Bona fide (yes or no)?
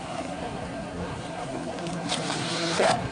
no